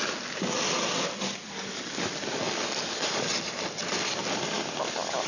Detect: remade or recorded recorded